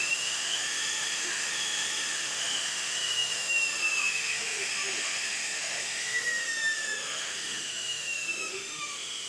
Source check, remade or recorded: remade